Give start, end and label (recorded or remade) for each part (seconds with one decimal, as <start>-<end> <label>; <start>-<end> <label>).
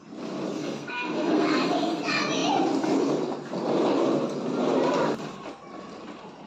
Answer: 0.0-0.6 recorded; 0.6-2.0 remade; 2.0-6.5 recorded